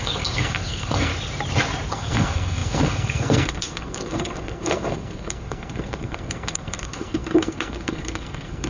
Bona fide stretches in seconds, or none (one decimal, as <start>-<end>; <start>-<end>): 1.1-1.9